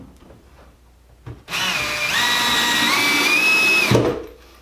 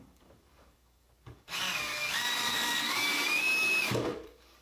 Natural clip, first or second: first